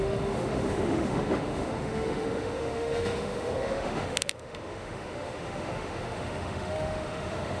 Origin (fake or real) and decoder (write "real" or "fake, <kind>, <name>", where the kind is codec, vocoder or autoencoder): fake, autoencoder, DAC-VAE